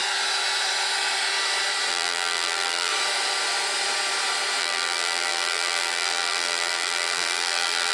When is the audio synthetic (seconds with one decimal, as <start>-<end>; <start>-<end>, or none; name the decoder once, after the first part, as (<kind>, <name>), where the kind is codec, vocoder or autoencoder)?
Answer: 1.9-2.9 (vocoder, BigVGAN v2); 4.6-7.9